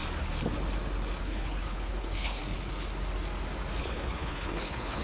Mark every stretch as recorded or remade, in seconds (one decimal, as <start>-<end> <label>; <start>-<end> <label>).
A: 0.0-1.2 recorded; 1.2-2.4 remade; 2.4-3.8 recorded; 3.8-5.0 remade